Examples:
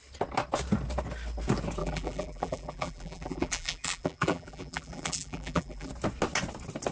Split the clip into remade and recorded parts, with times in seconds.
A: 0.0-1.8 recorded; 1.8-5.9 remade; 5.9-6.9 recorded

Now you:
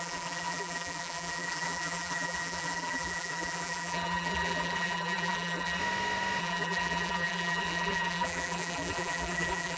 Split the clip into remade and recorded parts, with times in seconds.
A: 0.0-5.8 remade; 5.8-6.4 recorded; 6.4-9.8 remade